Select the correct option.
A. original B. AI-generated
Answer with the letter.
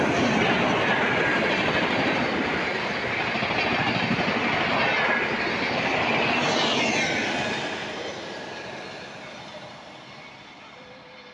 A